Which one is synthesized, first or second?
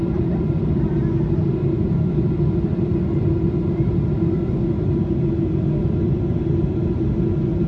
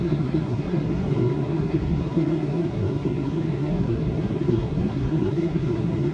second